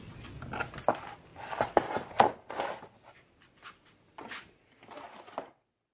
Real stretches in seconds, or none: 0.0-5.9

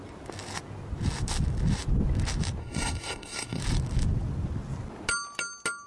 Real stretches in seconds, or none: 0.0-2.6; 3.6-5.9